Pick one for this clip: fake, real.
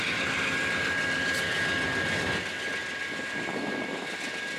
real